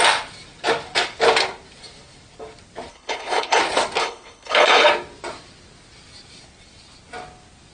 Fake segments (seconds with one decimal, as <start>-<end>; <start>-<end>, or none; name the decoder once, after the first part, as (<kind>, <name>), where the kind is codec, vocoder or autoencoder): 2.9-3.6 (codec, HILCodec); 4.0-4.9